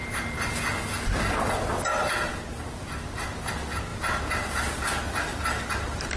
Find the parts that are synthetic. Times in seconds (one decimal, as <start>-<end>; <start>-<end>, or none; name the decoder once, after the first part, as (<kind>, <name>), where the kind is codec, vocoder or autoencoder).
1.9-3.5 (vocoder, BigVGAN v2); 3.9-4.5